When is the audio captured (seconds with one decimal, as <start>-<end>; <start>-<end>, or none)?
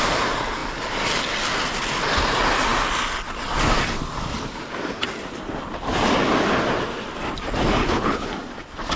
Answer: 0.0-7.8; 8.3-9.0